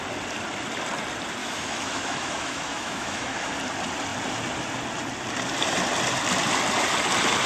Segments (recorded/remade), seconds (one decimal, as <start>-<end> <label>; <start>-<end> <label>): 0.0-1.4 recorded; 1.4-3.5 remade; 3.5-7.5 recorded